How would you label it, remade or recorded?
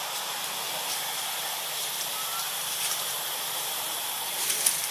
recorded